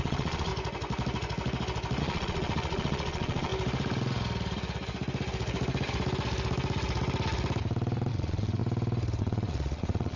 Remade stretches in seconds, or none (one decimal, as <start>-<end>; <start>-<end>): 0.0-0.5; 2.0-3.5; 8.1-8.6; 9.2-10.2